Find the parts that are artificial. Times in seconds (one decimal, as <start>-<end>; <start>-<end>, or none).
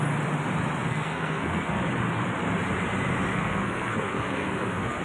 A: 0.9-1.8; 3.3-5.0